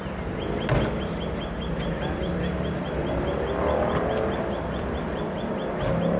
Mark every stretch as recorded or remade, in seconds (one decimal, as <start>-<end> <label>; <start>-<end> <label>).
0.0-6.2 recorded